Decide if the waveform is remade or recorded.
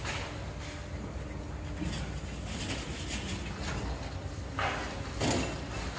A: recorded